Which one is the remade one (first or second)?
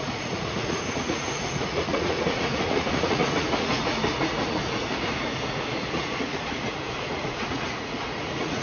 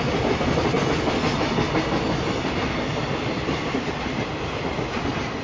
first